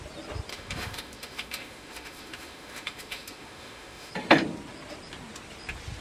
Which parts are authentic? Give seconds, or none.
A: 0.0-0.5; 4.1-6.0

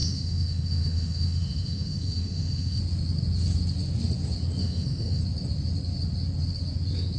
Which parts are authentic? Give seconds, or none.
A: 2.8-4.6; 5.2-7.2

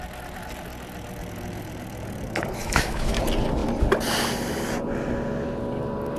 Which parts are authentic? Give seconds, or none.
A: 0.0-2.6; 3.2-6.2